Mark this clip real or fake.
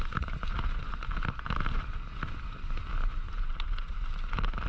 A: real